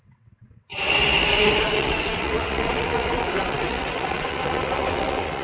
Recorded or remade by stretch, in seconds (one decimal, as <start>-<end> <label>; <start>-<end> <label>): 0.0-0.7 remade; 0.7-1.6 recorded; 1.6-5.4 remade